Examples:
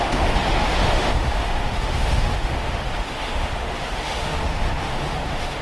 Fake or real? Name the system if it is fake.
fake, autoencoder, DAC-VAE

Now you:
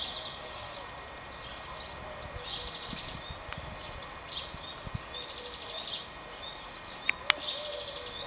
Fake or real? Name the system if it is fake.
real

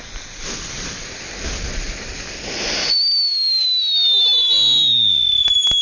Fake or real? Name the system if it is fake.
real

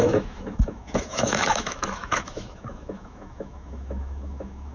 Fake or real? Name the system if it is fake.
fake, autoencoder, DAC-VAE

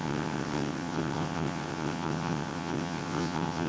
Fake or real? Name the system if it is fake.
fake, vocoder, WaveNeXt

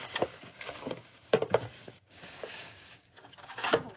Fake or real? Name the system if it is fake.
fake, codec, DAC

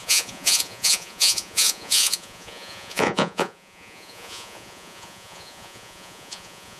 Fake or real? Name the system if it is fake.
fake, vocoder, Vocos